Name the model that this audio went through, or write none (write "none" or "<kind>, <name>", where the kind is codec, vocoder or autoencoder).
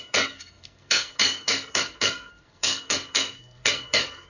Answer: codec, SNAC